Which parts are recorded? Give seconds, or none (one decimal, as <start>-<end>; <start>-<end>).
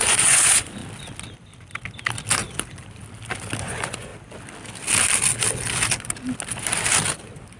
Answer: 0.8-3.6; 4.1-7.6